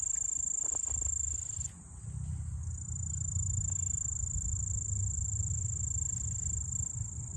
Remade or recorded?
recorded